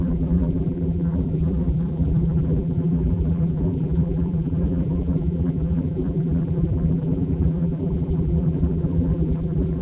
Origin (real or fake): fake